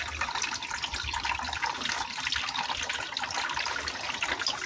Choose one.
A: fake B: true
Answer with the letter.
B